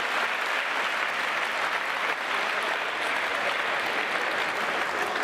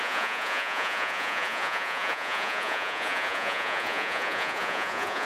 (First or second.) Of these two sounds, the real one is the first